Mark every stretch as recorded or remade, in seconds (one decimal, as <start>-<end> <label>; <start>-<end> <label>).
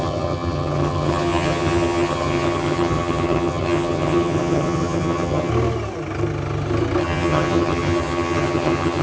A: 0.0-5.5 remade; 5.5-7.0 recorded; 7.0-9.0 remade